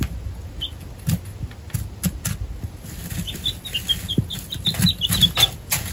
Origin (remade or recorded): recorded